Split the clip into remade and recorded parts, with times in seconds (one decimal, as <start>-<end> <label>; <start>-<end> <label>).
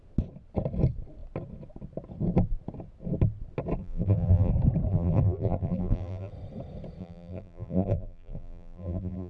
0.0-3.8 recorded; 3.8-4.5 remade; 4.5-4.9 recorded; 4.9-6.3 remade; 6.3-7.0 recorded; 7.0-9.3 remade